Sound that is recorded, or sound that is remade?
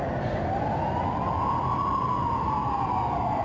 recorded